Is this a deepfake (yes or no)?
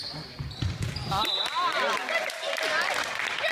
no